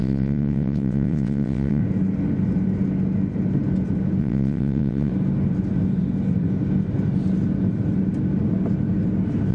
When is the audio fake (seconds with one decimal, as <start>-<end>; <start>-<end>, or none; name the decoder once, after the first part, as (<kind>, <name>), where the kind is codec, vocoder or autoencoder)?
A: 0.0-1.8 (vocoder, WaveNeXt); 4.2-5.1